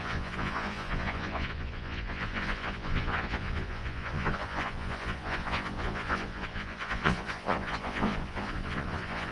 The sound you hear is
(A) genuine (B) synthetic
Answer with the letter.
B